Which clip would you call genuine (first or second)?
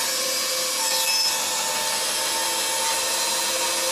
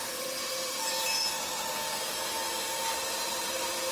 first